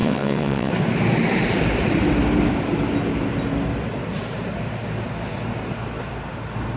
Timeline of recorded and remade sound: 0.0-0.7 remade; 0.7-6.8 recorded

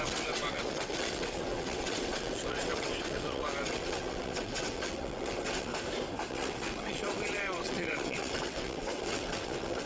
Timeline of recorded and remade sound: 0.0-5.7 remade; 5.7-6.3 recorded; 6.3-9.9 remade